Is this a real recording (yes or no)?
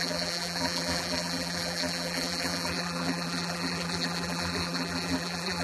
no